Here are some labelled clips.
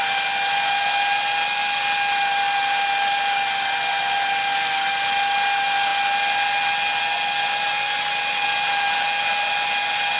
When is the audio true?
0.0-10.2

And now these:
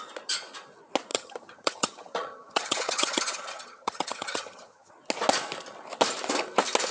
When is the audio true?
0.0-1.1; 4.9-6.9